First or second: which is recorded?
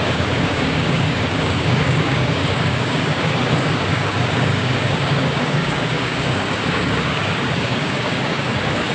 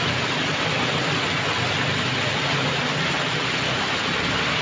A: second